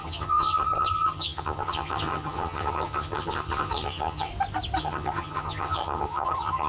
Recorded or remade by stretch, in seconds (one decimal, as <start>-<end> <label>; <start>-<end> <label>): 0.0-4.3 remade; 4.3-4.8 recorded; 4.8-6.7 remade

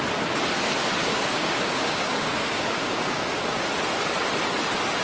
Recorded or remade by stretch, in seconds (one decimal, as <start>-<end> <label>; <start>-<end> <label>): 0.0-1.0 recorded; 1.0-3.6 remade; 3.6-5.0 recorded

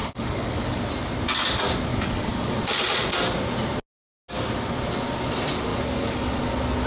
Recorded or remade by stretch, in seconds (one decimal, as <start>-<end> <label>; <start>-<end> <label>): 0.0-0.8 remade; 0.8-1.9 recorded; 1.9-2.6 remade; 2.6-5.7 recorded; 5.7-6.4 remade; 6.4-6.9 recorded

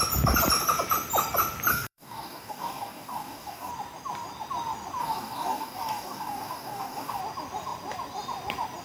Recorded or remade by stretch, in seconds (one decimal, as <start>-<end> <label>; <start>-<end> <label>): 0.0-1.7 recorded; 1.7-3.7 remade; 3.7-5.0 recorded; 5.0-7.2 remade; 7.2-8.8 recorded